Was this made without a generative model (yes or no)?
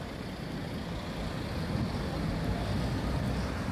yes